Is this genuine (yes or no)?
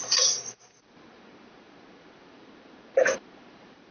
no